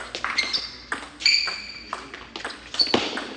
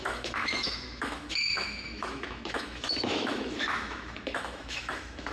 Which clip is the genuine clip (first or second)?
first